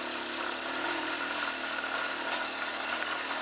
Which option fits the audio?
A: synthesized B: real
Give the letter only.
B